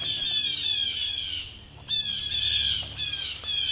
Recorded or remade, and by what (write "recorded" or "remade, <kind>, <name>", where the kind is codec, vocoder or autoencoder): remade, vocoder, BigVGAN v2